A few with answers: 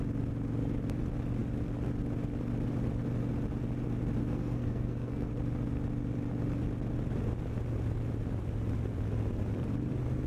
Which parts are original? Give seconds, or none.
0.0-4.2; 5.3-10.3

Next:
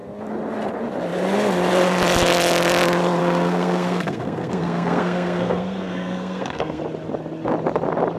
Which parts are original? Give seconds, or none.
0.0-3.2; 6.8-8.2

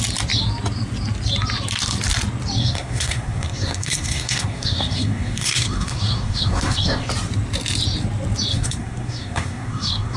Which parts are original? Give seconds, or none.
0.0-2.6; 7.1-8.5